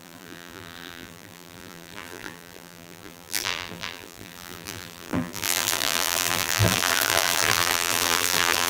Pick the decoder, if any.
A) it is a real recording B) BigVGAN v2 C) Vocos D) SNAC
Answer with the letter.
B